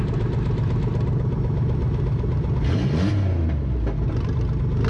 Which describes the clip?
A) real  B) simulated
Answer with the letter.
A